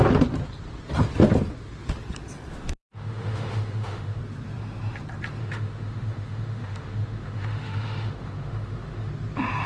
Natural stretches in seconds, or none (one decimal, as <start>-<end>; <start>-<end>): 0.0-2.5; 4.2-5.4; 9.1-9.7